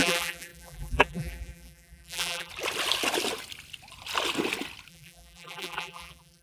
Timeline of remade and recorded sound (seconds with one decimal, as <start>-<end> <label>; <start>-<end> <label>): 0.0-2.5 remade; 2.5-4.9 recorded; 4.9-6.4 remade